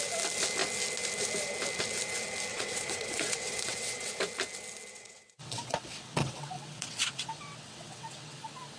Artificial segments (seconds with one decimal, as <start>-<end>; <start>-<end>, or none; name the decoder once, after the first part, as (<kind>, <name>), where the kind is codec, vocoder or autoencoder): 2.5-4.1 (vocoder, WaveNeXt); 4.9-8.4